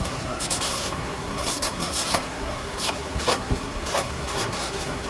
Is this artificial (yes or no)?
yes